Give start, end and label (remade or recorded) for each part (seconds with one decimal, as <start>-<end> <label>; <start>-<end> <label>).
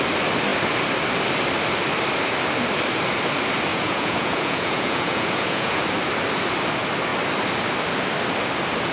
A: 0.0-3.7 recorded; 3.7-5.8 remade; 5.8-8.9 recorded